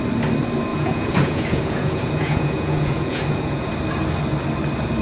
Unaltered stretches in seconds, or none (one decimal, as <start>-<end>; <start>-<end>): 0.0-0.7; 3.7-5.0